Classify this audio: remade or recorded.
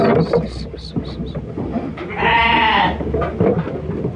recorded